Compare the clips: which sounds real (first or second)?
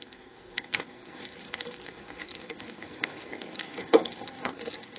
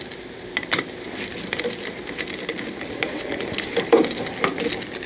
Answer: second